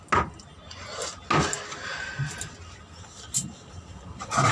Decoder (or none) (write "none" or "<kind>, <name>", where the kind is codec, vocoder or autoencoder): none